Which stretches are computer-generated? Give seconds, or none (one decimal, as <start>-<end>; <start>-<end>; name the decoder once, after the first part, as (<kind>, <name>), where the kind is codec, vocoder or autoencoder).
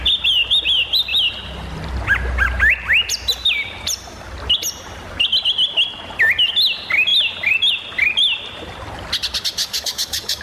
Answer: 9.6-10.4 (codec, DAC)